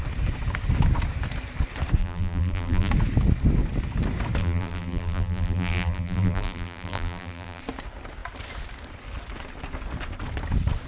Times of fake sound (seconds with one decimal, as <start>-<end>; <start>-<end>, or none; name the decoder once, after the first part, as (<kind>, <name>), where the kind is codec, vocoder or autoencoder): 2.0-2.9 (vocoder, BigVGAN v2); 4.4-7.6